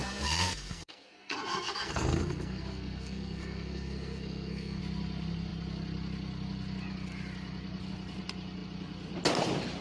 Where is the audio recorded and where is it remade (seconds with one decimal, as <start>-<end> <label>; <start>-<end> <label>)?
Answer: 0.0-4.8 remade; 4.8-9.8 recorded

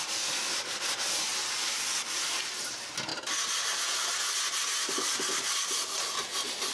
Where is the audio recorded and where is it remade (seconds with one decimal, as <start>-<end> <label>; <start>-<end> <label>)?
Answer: 0.0-6.7 recorded

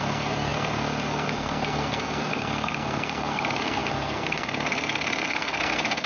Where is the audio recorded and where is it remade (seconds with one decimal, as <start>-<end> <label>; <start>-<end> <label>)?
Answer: 0.0-6.1 remade

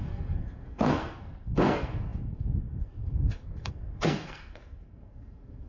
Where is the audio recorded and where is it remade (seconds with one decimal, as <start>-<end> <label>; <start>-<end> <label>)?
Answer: 0.0-5.7 remade

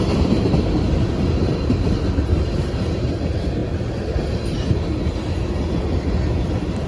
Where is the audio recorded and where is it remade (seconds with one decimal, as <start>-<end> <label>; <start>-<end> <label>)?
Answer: 0.0-6.9 recorded

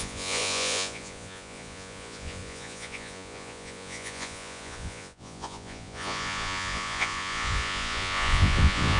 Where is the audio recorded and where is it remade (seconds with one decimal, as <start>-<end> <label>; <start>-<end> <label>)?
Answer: 0.0-9.0 remade

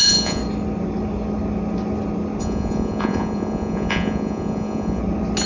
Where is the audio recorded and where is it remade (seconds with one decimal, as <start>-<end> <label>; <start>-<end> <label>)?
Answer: 0.0-0.4 remade; 0.4-2.4 recorded; 2.4-5.0 remade; 5.0-5.5 recorded